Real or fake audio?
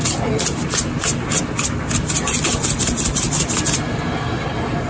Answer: real